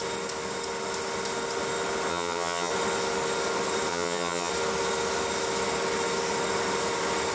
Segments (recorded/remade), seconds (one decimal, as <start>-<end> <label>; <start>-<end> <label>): 0.0-2.1 recorded; 2.1-2.7 remade; 2.7-3.9 recorded; 3.9-4.5 remade; 4.5-7.3 recorded